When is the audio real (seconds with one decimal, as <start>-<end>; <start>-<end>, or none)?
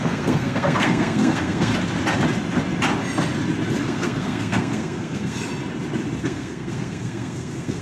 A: 1.7-3.8; 5.5-6.2